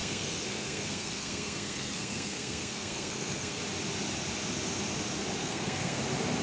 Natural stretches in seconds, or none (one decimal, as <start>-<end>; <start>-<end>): 3.6-5.4; 6.0-6.4